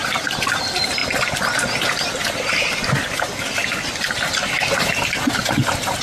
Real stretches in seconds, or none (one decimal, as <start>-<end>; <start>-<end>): 0.0-6.0

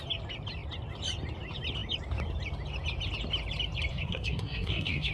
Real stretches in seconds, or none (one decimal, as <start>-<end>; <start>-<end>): 0.0-3.9

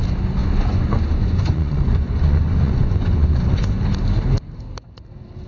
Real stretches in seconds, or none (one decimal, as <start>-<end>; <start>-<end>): 0.0-0.4; 3.7-5.5

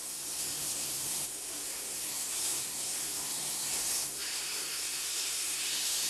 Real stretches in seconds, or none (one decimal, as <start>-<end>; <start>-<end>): none

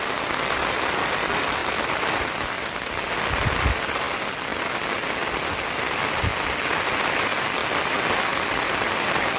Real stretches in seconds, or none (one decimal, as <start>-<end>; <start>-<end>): 0.0-9.4

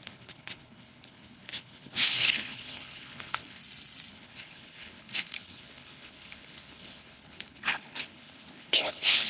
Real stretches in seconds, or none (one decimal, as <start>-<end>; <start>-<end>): 3.6-4.1